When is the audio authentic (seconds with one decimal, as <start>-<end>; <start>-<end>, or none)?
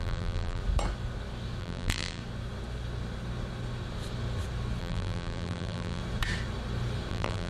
0.6-1.6; 2.2-4.8; 6.0-7.1